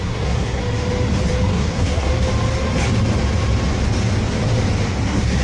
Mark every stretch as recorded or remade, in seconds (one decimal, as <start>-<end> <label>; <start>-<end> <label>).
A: 0.0-0.6 remade; 0.6-1.5 recorded; 1.5-2.1 remade; 2.1-5.0 recorded; 5.0-5.4 remade